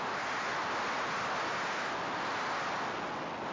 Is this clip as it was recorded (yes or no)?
yes